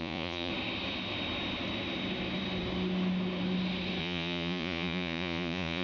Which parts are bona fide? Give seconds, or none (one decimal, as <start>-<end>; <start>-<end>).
0.5-4.0